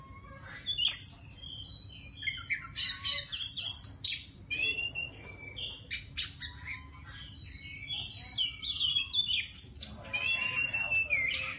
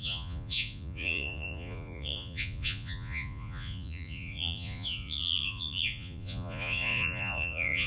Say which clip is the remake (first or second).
second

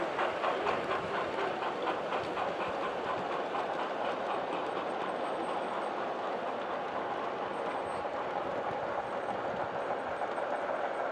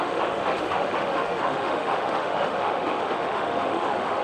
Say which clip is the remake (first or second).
second